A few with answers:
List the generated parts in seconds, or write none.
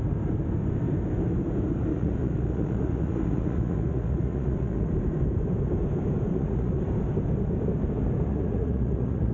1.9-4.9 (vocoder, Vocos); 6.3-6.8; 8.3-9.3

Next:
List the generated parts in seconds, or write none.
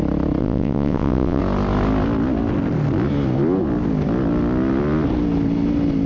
0.4-1.4 (vocoder, WaveNeXt)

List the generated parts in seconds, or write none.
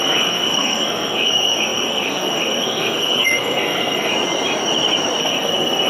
0.0-4.1 (codec, SNAC); 5.2-5.9